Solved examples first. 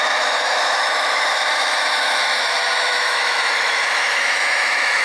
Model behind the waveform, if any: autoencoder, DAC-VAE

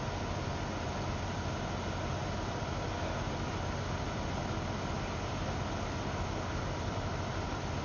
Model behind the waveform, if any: none